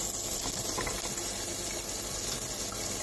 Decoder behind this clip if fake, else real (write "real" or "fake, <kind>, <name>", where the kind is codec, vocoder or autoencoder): real